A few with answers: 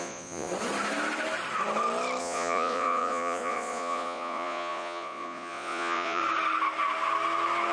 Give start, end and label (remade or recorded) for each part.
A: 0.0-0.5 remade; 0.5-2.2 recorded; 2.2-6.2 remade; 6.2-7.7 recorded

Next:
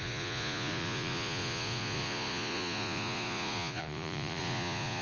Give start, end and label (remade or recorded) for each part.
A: 0.0-5.0 remade

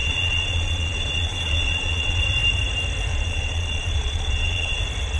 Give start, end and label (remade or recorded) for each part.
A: 0.0-2.2 remade; 2.2-3.1 recorded; 3.1-4.8 remade; 4.8-5.2 recorded

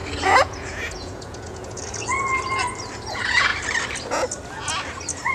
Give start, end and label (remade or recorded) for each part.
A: 0.0-1.8 remade; 1.8-3.1 recorded; 3.1-3.5 remade; 3.5-5.3 recorded

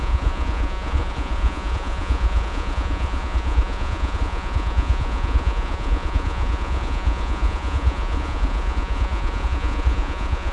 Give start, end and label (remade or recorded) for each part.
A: 0.0-10.5 remade